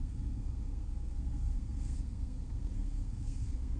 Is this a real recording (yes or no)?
no